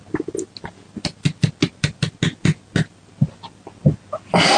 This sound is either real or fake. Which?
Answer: real